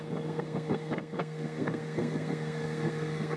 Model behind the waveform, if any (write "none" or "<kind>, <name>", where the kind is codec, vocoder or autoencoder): codec, SNAC